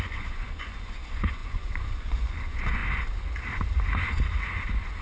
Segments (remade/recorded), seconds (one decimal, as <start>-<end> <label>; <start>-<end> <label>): 0.0-2.8 remade; 2.8-5.0 recorded